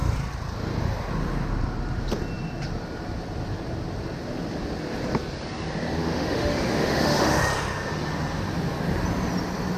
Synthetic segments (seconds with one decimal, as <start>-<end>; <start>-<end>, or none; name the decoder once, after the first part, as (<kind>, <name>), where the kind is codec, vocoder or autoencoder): 6.0-7.4 (autoencoder, DAC-VAE)